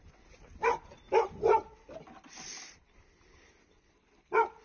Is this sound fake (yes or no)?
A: no